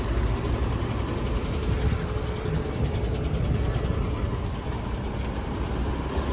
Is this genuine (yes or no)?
yes